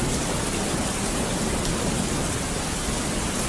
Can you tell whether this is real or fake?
real